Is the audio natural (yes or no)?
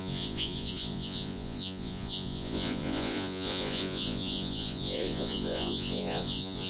no